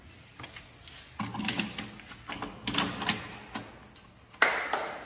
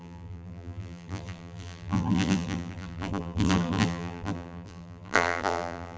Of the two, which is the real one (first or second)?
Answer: first